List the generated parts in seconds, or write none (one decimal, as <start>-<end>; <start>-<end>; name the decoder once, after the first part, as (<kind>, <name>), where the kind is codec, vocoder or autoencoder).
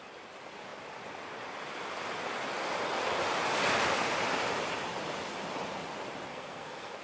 6.3-7.0 (codec, SNAC)